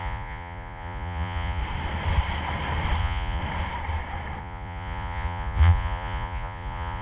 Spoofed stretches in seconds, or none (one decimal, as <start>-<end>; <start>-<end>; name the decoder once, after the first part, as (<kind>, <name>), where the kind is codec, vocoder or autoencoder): 0.0-1.6 (vocoder, Vocos); 3.0-3.4; 4.4-7.0

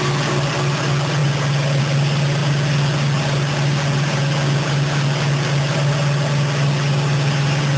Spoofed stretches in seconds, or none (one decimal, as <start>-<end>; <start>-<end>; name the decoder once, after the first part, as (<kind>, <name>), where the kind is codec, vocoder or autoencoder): none

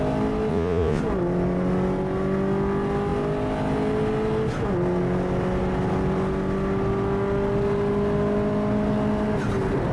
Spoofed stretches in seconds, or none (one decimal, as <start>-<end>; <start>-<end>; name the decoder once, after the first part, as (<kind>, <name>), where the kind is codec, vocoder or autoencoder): 0.5-1.0 (vocoder, Vocos)

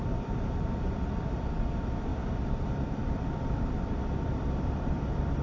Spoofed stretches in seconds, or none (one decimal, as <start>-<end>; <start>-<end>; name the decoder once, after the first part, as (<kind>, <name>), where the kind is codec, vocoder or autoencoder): 0.0-2.1 (vocoder, BigVGAN v2); 2.7-5.4

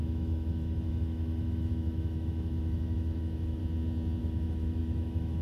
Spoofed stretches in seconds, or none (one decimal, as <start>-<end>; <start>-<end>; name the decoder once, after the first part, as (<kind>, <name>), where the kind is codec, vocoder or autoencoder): 0.0-3.6 (autoencoder, DAC-VAE); 4.2-5.4

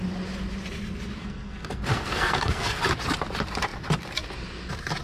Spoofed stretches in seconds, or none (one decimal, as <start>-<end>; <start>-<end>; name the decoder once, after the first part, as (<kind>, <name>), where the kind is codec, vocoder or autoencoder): 1.2-2.8 (codec, SNAC)